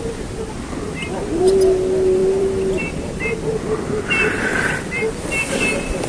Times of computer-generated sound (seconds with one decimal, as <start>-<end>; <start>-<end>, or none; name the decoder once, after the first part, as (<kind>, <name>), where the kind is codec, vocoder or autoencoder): 2.2-3.6 (vocoder, BigVGAN v2); 4.5-6.1